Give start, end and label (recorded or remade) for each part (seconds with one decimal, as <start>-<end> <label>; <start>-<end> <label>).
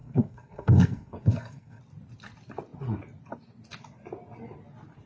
0.0-1.8 remade; 1.8-5.1 recorded